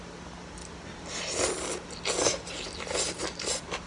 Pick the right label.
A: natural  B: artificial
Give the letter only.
A